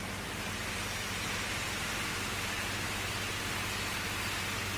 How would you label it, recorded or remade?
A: recorded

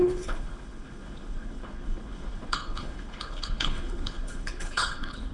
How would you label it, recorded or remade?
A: remade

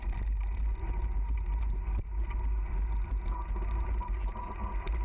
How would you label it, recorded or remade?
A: recorded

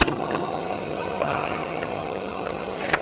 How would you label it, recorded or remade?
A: remade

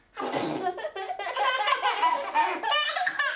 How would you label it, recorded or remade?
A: recorded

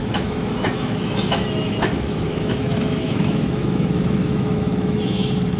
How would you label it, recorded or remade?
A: remade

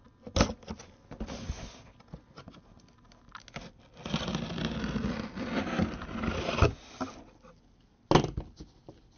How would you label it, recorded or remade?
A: recorded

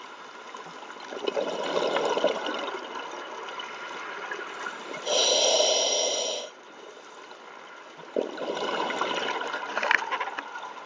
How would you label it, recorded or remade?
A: recorded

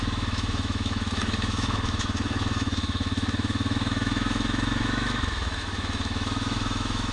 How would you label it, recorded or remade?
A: remade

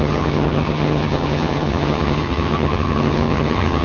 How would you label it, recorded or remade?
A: remade